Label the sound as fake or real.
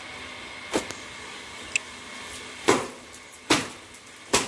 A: real